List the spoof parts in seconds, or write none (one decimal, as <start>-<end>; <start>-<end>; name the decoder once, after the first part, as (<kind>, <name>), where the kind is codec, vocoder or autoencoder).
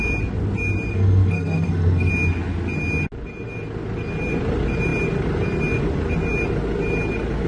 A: 0.9-2.1 (codec, SNAC)